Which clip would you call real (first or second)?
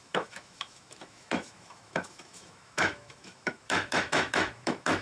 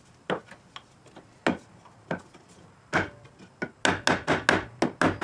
second